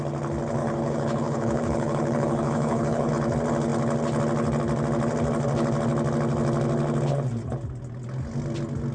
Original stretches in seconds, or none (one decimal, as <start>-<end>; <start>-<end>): 0.0-0.6; 3.1-8.9